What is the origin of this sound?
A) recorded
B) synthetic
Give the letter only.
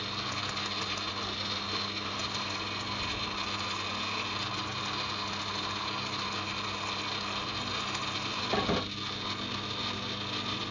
A